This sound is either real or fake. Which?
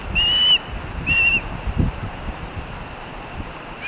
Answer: real